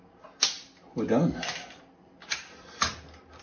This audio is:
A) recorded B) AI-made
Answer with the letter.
A